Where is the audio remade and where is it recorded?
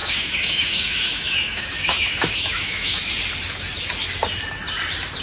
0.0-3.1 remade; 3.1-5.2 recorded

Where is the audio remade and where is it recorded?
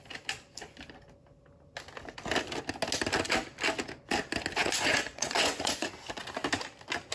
0.0-4.6 recorded; 4.6-5.9 remade; 5.9-7.1 recorded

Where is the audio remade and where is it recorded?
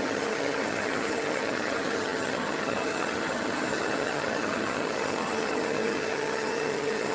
0.0-7.1 remade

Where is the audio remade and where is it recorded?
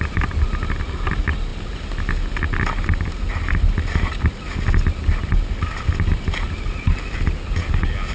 0.0-8.1 recorded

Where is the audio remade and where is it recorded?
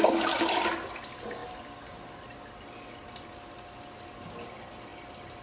0.0-5.4 recorded